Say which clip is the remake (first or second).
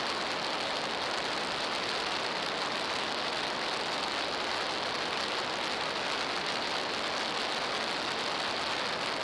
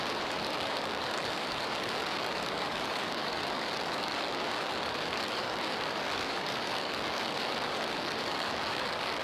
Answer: second